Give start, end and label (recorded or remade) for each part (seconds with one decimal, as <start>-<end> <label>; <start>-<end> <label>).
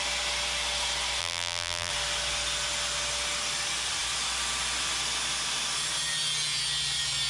0.0-1.2 recorded; 1.2-1.9 remade; 1.9-7.3 recorded